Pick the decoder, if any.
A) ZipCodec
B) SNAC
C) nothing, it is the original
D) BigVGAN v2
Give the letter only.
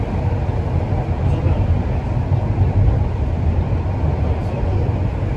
C